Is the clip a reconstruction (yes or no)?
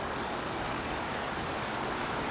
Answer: yes